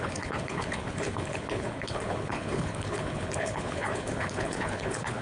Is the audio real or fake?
fake